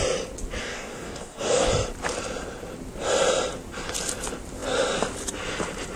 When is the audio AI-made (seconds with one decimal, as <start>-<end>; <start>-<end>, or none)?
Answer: 0.6-1.7